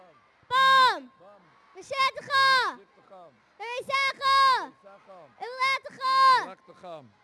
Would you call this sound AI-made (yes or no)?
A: no